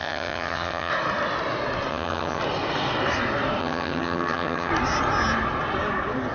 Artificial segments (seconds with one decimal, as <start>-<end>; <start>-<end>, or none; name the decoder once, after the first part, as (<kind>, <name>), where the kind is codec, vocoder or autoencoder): 0.0-0.9 (vocoder, HiFi-GAN); 1.9-2.4; 3.6-4.7